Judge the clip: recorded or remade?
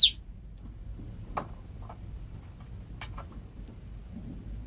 recorded